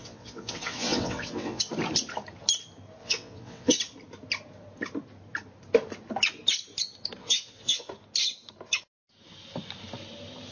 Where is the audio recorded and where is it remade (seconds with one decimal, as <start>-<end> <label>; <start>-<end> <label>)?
0.0-1.7 remade; 1.7-3.0 recorded; 3.0-3.8 remade; 3.8-7.2 recorded; 7.2-7.9 remade; 7.9-10.5 recorded